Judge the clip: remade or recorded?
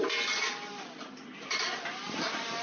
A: recorded